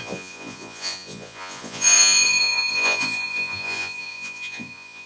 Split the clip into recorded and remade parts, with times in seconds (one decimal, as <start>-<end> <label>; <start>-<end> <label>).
0.0-5.1 remade